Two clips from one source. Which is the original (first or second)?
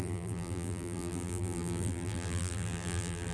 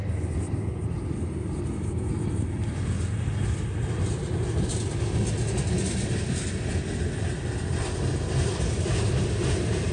second